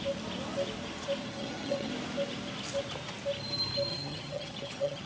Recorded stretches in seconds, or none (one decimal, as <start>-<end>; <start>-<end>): 0.0-1.2; 1.9-3.9

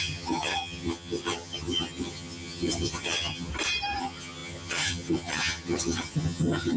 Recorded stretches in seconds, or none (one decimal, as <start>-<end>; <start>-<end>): 3.5-4.0

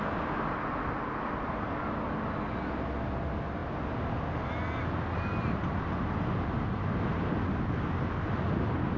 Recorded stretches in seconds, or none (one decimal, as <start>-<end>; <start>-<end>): 0.0-9.0

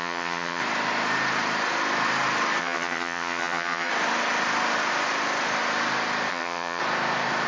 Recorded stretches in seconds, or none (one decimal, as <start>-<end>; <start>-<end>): 0.6-2.6; 3.9-6.3; 6.8-7.5

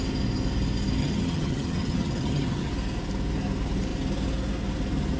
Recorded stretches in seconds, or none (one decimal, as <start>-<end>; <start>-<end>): 0.0-1.0; 2.7-5.2

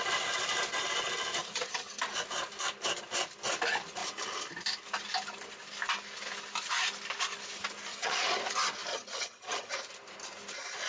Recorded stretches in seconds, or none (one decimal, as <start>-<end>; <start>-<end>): 0.0-1.4; 2.0-7.9; 8.4-8.9; 9.7-10.9

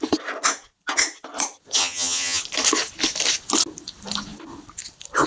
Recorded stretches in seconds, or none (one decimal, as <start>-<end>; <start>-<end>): 0.0-1.8; 2.4-5.3

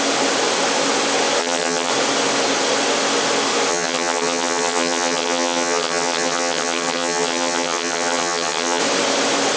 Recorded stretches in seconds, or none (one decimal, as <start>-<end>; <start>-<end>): 0.0-1.4; 1.9-3.7; 8.8-9.6